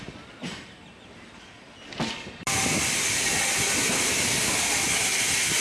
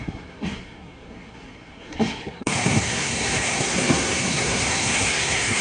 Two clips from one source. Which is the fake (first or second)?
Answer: second